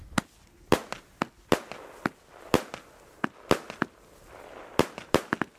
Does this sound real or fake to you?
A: real